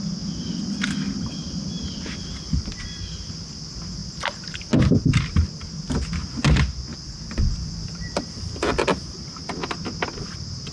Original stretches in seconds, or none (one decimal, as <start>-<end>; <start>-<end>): 0.0-6.9; 8.8-10.7